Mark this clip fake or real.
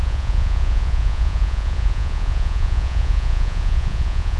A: fake